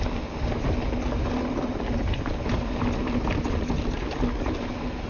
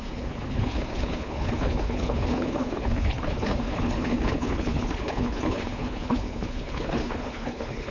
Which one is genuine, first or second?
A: first